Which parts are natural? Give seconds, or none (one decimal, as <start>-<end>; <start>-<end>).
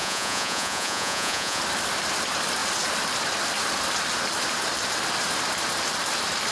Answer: 1.6-6.5